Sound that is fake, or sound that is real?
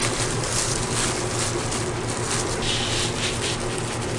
real